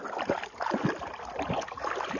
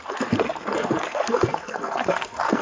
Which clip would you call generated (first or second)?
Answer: second